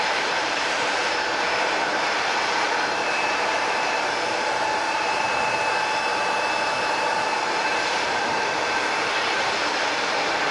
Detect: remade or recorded remade